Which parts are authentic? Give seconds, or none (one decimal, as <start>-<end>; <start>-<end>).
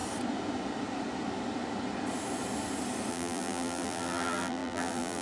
0.0-3.1